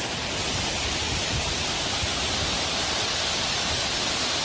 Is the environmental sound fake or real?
real